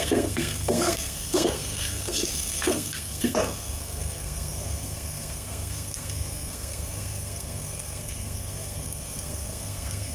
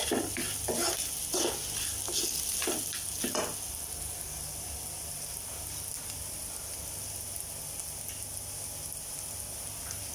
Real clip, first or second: second